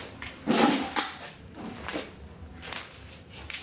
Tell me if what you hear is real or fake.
real